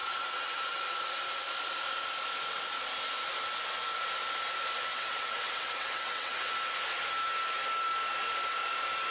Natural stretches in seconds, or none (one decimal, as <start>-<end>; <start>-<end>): 0.8-4.9; 6.4-9.1